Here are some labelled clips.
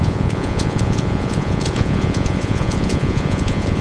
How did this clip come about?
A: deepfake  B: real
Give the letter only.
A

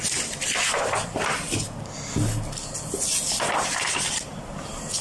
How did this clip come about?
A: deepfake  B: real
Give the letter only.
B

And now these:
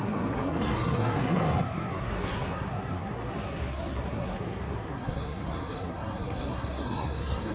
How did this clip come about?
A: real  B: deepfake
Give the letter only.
B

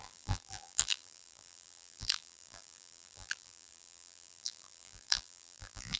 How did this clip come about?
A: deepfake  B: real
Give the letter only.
A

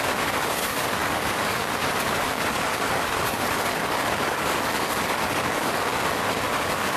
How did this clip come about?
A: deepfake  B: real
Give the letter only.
A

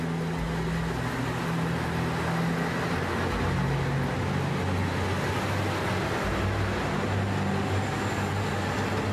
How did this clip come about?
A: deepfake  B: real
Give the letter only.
B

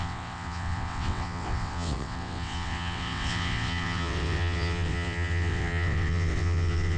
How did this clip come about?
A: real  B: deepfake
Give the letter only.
B